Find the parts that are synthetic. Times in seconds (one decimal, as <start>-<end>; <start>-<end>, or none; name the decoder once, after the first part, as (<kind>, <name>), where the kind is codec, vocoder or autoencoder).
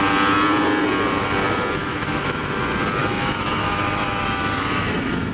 1.8-2.6 (autoencoder, DAC-VAE); 3.0-5.3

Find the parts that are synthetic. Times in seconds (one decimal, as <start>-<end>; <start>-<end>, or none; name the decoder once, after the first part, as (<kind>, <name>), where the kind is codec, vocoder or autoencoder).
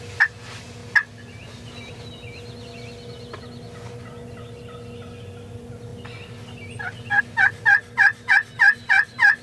none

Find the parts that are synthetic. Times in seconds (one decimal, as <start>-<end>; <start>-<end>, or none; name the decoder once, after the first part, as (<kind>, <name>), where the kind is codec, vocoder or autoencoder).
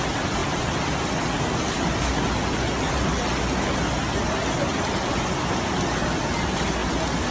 none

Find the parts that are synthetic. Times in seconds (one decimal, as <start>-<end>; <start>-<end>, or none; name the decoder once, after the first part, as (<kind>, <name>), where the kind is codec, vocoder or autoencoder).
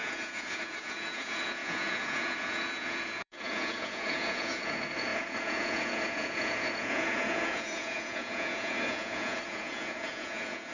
0.0-10.7 (vocoder, Vocos)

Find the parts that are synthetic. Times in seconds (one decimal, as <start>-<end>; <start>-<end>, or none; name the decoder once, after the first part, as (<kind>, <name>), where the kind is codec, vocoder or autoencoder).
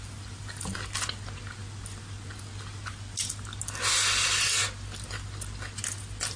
none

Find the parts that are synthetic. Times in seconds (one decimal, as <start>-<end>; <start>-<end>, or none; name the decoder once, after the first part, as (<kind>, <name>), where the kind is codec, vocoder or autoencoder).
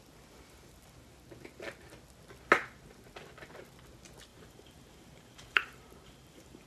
4.3-6.7 (vocoder, BigVGAN v2)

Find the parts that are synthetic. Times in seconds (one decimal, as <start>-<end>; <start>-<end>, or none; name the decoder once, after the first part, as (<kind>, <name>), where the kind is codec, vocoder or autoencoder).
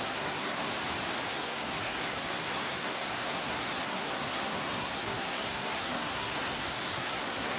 0.0-0.7 (codec, SNAC); 1.3-7.6